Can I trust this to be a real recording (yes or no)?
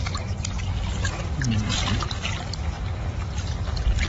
yes